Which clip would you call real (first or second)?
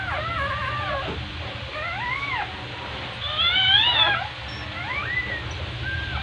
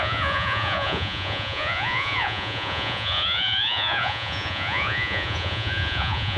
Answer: first